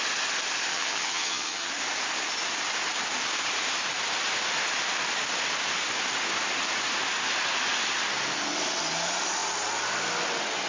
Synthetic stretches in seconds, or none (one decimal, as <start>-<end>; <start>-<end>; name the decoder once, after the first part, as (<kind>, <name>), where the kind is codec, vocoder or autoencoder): 0.7-1.7 (vocoder, HiFi-GAN)